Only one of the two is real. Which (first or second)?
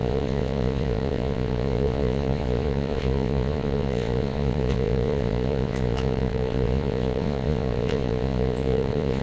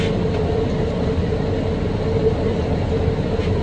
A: second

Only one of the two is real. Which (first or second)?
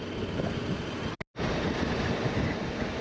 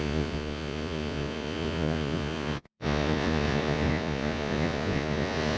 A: first